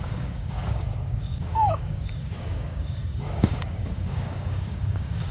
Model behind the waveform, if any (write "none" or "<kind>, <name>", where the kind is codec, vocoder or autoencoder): codec, DAC